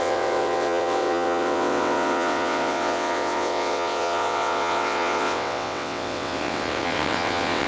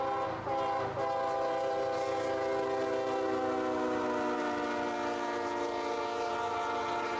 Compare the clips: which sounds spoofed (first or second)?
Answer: first